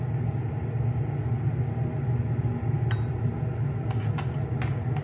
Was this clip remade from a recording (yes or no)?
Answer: no